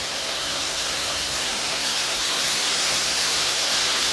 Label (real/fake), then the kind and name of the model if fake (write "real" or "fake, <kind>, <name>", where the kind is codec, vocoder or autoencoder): fake, codec, SNAC